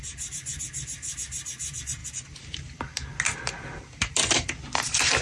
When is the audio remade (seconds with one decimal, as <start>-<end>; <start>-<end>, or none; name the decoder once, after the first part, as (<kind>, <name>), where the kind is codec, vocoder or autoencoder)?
none